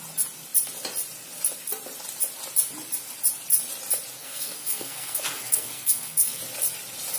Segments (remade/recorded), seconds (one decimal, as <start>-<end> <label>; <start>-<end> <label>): 0.0-4.2 recorded; 4.2-6.4 remade; 6.4-7.2 recorded